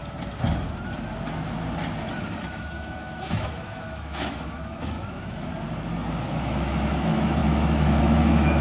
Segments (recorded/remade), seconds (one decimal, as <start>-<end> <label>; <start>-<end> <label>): 0.0-2.4 recorded; 2.4-5.5 remade; 5.5-6.3 recorded; 6.3-8.6 remade